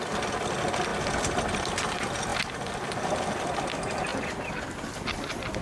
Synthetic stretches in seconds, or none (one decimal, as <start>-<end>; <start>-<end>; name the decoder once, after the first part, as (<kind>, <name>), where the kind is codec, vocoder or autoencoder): none